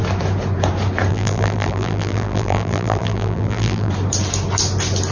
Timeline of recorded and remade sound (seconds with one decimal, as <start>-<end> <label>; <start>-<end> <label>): 0.0-1.1 recorded; 1.1-3.9 remade; 3.9-5.1 recorded